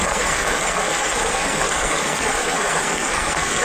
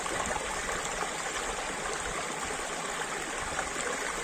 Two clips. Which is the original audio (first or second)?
second